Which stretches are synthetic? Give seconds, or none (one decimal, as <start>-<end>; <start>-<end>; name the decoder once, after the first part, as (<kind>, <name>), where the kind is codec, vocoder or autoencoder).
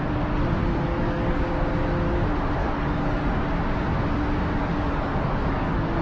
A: 0.6-1.4 (codec, DAC); 2.6-3.2; 4.6-6.0